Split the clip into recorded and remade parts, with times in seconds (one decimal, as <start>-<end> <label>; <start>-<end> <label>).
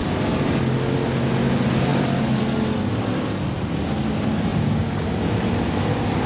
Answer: 0.0-1.9 recorded; 1.9-3.1 remade; 3.1-4.5 recorded; 4.5-6.3 remade